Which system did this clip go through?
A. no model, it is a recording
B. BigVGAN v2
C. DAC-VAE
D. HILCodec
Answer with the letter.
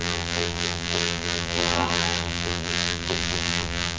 B